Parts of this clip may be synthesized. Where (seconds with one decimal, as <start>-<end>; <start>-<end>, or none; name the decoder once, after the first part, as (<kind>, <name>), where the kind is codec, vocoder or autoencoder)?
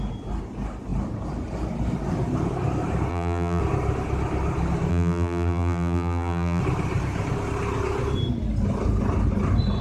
3.1-3.6 (vocoder, BigVGAN v2); 4.9-6.6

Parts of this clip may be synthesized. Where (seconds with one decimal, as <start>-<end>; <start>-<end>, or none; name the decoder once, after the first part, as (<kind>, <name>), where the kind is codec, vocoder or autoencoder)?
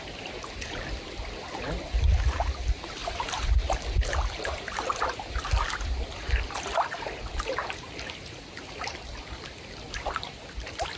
3.0-3.7 (vocoder, BigVGAN v2)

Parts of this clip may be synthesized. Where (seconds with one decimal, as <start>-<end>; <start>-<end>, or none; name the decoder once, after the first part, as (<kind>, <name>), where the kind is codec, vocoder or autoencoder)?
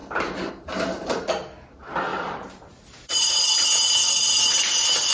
2.1-3.4 (vocoder, BigVGAN v2)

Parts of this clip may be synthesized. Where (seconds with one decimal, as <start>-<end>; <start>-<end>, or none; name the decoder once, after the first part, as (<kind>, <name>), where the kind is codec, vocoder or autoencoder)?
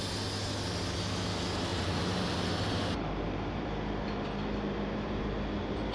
1.7-5.2 (vocoder, BigVGAN v2)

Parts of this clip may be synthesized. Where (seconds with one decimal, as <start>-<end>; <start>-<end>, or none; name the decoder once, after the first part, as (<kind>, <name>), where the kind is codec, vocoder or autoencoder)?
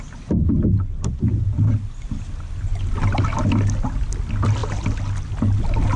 none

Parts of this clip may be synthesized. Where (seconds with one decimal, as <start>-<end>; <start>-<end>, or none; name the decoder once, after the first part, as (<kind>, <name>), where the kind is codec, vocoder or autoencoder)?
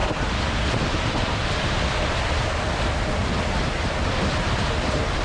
0.0-3.2 (vocoder, BigVGAN v2); 4.3-5.2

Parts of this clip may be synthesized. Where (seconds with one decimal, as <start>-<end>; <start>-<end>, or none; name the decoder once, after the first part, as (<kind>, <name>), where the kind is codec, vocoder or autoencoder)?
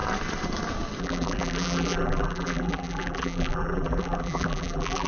1.0-5.1 (vocoder, BigVGAN v2)